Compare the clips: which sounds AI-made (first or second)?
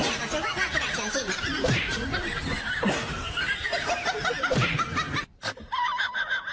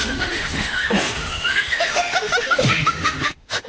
second